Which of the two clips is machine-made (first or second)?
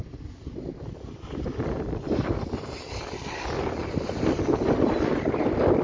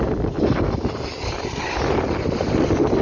first